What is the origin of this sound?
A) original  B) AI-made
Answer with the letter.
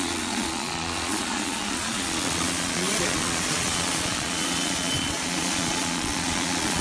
B